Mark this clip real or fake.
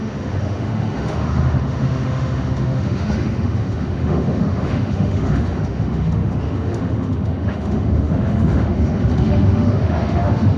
fake